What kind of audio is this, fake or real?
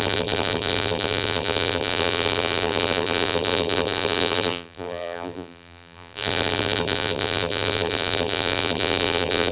fake